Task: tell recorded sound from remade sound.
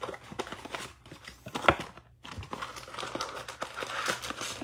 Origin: recorded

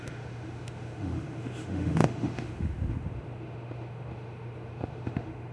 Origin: remade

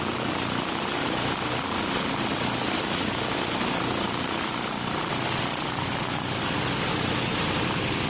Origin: recorded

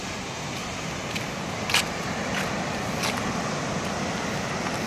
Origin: recorded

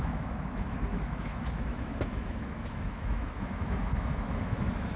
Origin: remade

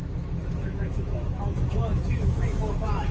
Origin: remade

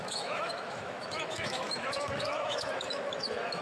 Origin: remade